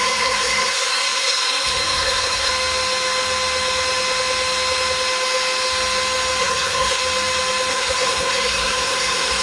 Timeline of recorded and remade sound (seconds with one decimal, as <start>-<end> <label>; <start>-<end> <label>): 0.0-2.5 remade; 2.5-6.4 recorded; 6.4-7.0 remade; 7.0-7.7 recorded; 7.7-9.4 remade